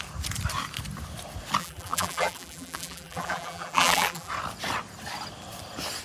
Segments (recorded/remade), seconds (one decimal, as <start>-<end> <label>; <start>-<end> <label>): 0.0-1.6 recorded; 1.6-4.3 remade; 4.3-6.0 recorded